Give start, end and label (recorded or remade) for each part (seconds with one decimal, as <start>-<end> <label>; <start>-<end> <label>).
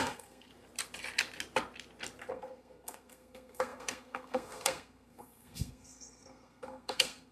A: 0.0-0.5 remade; 0.5-2.3 recorded; 2.3-7.3 remade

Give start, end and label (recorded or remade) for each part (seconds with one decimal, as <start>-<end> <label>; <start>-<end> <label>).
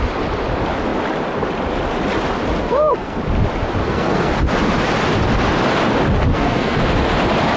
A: 0.0-2.6 recorded; 2.6-3.2 remade; 3.2-3.8 recorded; 3.8-4.3 remade; 4.3-6.3 recorded; 6.3-6.8 remade; 6.8-7.6 recorded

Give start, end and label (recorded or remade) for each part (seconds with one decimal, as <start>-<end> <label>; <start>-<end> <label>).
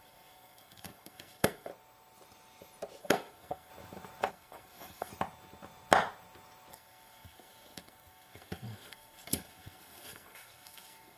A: 0.0-1.7 remade; 1.7-3.0 recorded; 3.0-3.7 remade; 3.7-4.3 recorded; 4.3-5.1 remade; 5.1-6.7 recorded; 6.7-11.2 remade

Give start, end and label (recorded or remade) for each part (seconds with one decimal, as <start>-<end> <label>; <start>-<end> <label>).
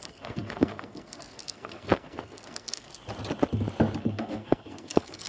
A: 0.0-2.9 remade; 2.9-4.0 recorded; 4.0-5.3 remade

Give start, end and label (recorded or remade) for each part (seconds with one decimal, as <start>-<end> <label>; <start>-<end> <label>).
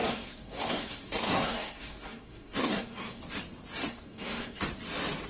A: 0.0-3.2 remade; 3.2-3.9 recorded; 3.9-4.6 remade; 4.6-5.3 recorded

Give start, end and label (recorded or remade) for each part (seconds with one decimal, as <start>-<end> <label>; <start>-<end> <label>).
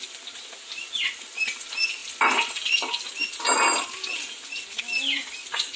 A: 0.0-5.8 recorded